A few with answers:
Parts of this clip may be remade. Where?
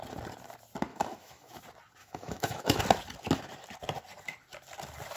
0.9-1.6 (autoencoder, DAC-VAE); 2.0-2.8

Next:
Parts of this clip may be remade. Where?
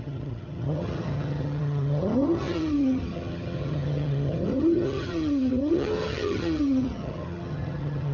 0.0-8.1 (vocoder, HiFi-GAN)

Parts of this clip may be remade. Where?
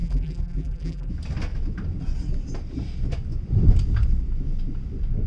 0.0-1.1 (vocoder, BigVGAN v2)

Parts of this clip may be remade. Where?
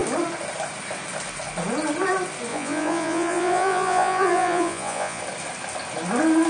2.5-5.2 (vocoder, Vocos)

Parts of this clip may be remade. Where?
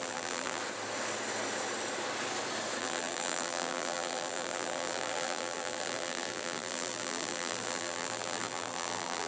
0.0-0.6 (vocoder, BigVGAN v2); 2.8-9.3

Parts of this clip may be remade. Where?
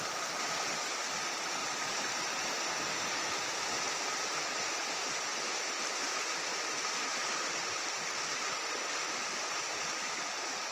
none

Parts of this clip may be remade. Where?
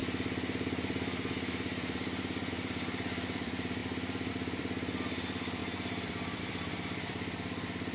0.0-7.9 (vocoder, BigVGAN v2)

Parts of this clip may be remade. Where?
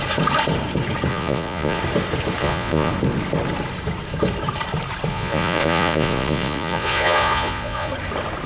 1.1-1.8 (vocoder, Vocos); 2.4-2.9; 5.1-7.9